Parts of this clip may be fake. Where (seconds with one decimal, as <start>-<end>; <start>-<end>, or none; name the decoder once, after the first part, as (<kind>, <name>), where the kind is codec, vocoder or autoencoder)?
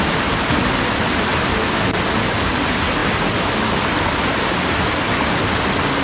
none